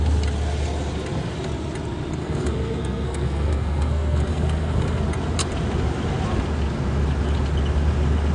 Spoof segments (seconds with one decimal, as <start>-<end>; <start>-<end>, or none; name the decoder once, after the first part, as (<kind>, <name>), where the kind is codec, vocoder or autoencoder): 2.2-5.0 (codec, SNAC)